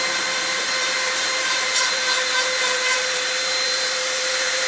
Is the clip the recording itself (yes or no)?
no